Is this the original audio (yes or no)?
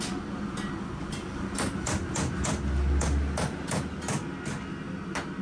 yes